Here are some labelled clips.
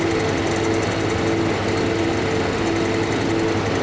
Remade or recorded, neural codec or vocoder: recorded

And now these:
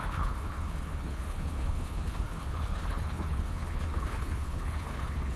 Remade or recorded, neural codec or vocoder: remade, codec, HILCodec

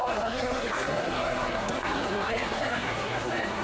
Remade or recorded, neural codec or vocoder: remade, codec, SNAC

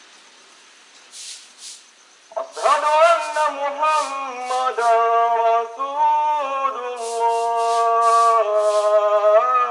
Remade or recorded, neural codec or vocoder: recorded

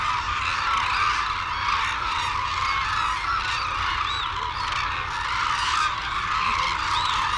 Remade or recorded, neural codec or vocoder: recorded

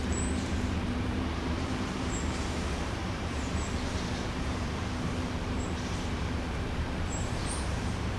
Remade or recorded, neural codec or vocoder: remade, vocoder, BigVGAN v2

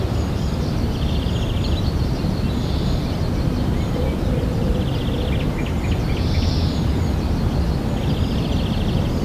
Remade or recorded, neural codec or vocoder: recorded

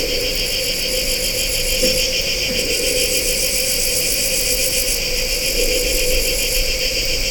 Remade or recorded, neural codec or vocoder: recorded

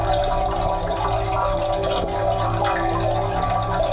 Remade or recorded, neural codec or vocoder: recorded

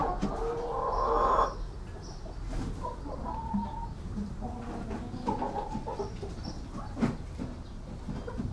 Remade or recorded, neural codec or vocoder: recorded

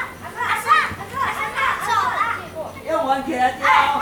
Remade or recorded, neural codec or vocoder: recorded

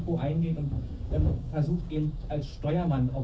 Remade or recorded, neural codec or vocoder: remade, codec, DAC